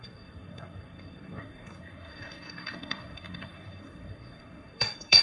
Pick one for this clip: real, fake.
fake